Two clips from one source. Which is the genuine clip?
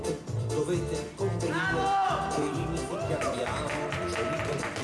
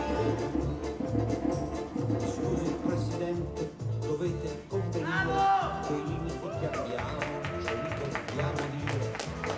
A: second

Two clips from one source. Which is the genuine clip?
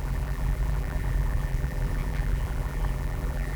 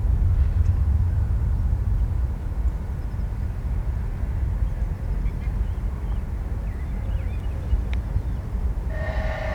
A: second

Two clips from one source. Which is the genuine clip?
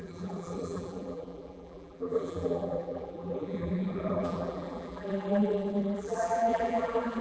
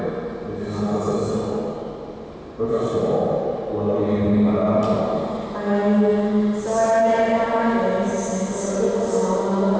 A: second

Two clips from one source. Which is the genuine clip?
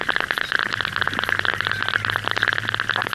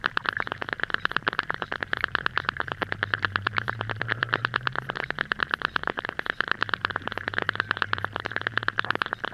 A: first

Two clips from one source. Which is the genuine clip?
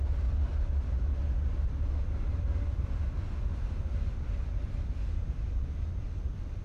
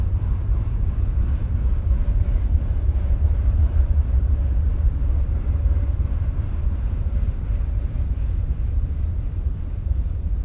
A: first